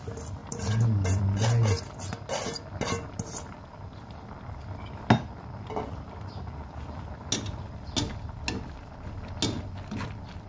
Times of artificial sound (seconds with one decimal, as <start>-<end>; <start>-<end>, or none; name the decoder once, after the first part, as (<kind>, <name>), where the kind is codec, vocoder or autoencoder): 0.4-1.2 (vocoder, BigVGAN v2)